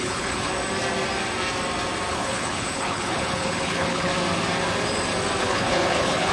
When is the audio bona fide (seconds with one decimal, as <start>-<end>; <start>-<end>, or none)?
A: 0.5-2.1; 4.1-5.4

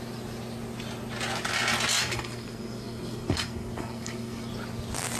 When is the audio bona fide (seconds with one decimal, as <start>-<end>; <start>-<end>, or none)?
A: 0.0-2.0; 4.5-5.2

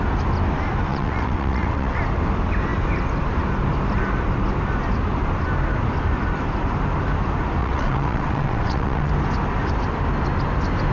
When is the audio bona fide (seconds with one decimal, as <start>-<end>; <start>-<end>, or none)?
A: 0.0-0.9; 2.0-7.6; 9.1-10.9

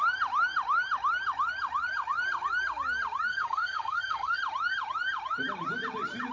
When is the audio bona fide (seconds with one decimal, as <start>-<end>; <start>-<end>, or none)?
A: 0.0-3.3; 4.4-6.3

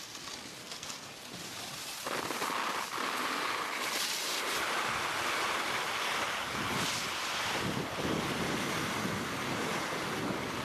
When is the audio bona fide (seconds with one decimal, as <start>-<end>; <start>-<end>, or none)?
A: 0.0-0.6; 1.1-10.6

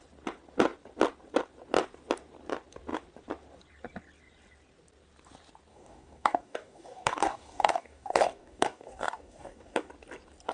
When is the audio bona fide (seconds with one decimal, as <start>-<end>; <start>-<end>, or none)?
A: 0.0-5.7; 9.9-10.5

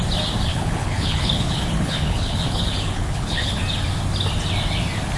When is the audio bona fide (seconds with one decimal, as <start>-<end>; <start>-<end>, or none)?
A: 0.0-0.5; 3.6-5.2